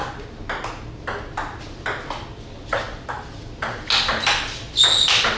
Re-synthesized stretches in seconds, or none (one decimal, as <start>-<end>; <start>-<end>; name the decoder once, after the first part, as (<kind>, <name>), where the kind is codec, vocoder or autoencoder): none